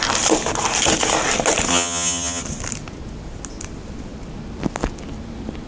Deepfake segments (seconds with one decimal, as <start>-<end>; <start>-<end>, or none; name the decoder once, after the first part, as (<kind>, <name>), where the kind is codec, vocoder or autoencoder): 1.7-2.4 (vocoder, HiFi-GAN)

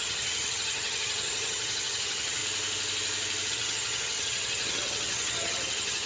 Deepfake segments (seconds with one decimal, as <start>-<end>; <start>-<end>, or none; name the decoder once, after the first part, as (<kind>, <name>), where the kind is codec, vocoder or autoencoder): 0.0-2.4 (vocoder, HiFi-GAN); 3.5-6.1

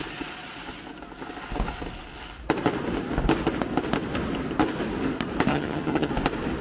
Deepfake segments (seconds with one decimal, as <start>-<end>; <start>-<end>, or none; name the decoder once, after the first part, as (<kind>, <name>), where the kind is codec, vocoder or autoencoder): 5.5-6.1 (vocoder, HiFi-GAN)